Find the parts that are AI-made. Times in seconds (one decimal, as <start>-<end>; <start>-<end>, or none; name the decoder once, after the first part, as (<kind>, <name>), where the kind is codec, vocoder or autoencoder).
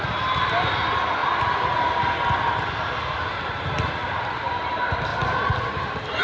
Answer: none